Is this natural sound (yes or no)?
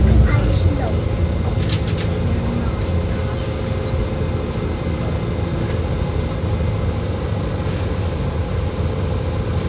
yes